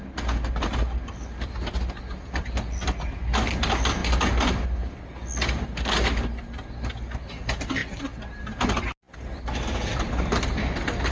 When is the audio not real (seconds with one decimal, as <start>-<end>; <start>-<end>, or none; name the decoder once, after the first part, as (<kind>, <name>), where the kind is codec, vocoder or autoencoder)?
none